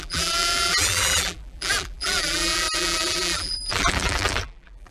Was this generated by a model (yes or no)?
yes